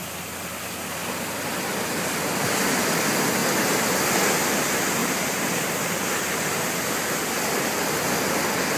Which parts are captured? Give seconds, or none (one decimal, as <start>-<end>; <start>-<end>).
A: 0.0-8.8